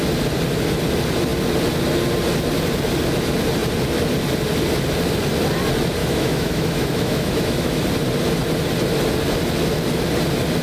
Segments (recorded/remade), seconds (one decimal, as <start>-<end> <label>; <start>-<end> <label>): 0.0-6.0 recorded; 6.0-7.8 remade; 7.8-10.6 recorded